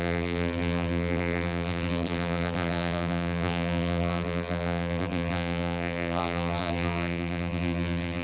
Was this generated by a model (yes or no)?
yes